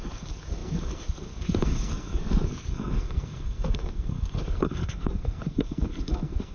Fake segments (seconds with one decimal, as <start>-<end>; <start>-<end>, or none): 0.0-6.5